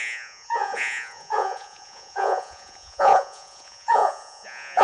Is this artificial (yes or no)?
yes